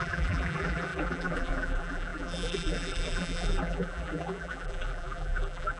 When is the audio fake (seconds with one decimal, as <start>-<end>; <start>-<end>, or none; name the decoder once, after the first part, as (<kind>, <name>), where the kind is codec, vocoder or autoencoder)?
0.0-5.8 (vocoder, BigVGAN v2)